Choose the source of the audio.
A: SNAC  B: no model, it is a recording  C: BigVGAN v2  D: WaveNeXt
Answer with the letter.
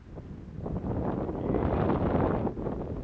B